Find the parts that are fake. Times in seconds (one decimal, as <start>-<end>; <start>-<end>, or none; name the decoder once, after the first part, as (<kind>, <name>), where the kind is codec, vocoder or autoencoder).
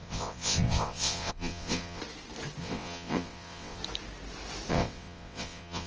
0.0-2.0 (vocoder, WaveNeXt); 2.6-3.8; 4.7-5.9